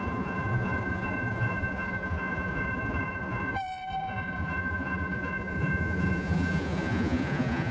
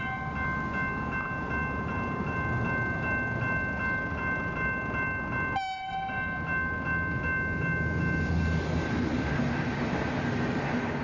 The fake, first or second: first